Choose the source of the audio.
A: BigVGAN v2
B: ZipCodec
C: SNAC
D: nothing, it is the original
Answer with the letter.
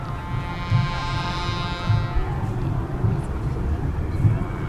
D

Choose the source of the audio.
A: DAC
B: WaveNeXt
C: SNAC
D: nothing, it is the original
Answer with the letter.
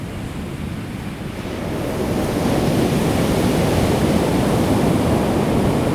D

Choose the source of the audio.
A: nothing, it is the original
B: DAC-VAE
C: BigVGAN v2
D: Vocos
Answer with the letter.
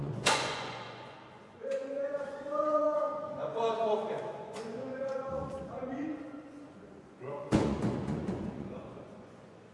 D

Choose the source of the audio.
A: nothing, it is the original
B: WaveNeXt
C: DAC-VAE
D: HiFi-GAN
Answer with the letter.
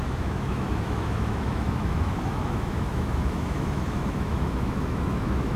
C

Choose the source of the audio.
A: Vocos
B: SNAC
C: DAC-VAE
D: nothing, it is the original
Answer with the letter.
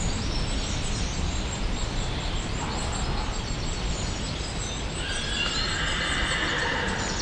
D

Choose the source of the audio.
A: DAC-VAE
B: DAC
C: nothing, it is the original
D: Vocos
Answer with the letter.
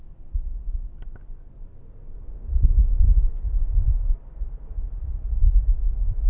C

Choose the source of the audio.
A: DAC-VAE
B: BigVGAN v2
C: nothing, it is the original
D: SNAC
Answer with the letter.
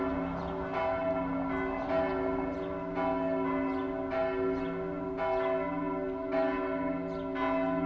C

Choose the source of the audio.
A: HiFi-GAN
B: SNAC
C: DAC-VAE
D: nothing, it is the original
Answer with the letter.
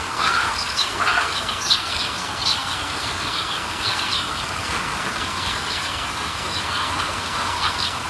B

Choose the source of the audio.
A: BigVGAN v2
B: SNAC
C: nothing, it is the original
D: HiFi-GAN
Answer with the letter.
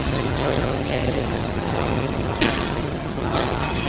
D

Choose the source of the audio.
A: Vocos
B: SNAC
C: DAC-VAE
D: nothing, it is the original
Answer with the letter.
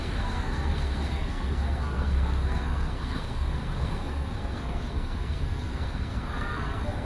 B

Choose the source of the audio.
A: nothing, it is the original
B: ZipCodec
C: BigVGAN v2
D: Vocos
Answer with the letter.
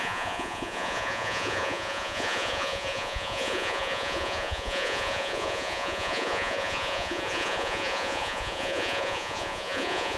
D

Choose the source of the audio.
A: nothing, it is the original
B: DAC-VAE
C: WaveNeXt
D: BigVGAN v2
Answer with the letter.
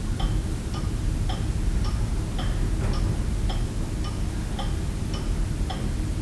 A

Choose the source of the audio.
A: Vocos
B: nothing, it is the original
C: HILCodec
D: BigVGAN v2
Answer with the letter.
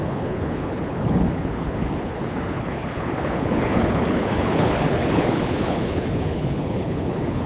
C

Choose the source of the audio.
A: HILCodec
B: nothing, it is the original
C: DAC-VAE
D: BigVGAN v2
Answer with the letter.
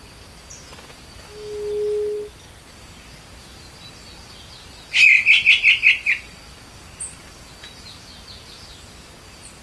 B